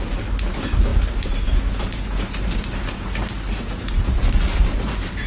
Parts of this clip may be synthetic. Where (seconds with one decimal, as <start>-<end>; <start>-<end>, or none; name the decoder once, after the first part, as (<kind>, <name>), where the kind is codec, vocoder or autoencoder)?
none